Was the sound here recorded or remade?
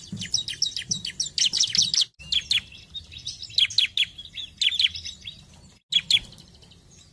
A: recorded